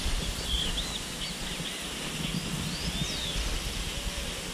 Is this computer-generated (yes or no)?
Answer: no